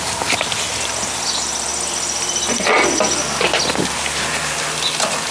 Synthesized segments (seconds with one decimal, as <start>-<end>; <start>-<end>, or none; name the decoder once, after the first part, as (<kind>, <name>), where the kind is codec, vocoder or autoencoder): 0.0-1.7 (vocoder, BigVGAN v2)